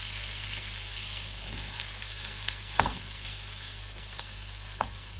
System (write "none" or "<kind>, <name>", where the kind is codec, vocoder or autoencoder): codec, SNAC